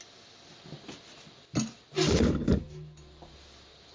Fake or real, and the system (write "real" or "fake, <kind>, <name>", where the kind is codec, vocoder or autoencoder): real